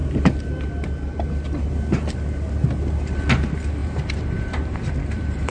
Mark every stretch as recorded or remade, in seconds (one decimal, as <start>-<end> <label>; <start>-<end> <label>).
0.0-3.8 recorded; 3.8-5.5 remade